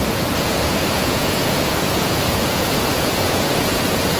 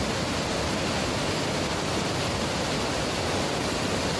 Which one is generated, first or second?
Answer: first